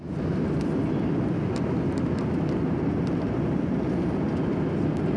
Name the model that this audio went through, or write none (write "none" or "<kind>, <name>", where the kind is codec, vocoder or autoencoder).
none